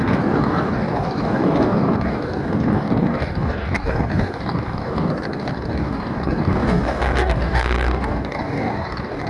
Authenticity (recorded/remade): remade